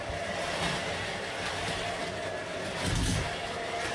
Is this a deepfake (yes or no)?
no